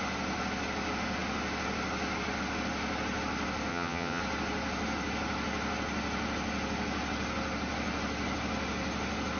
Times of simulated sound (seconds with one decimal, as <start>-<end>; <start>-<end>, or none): 3.7-4.2